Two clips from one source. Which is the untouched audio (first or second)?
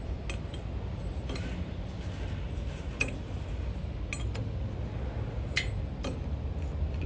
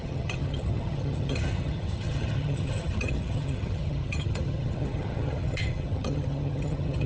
first